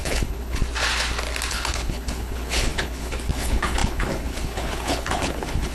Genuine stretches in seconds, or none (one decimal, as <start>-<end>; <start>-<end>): 0.6-1.5